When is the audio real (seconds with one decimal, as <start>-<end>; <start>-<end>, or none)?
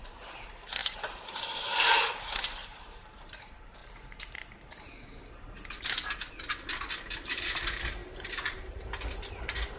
3.8-5.8